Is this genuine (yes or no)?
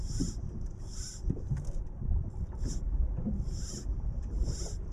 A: no